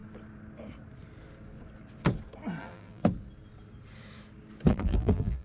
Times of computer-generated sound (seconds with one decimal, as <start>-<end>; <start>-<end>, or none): 2.6-3.0; 4.7-5.4